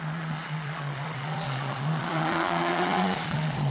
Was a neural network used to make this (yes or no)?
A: yes